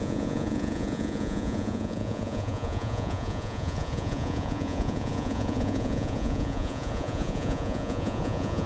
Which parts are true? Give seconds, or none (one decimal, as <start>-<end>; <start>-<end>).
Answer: none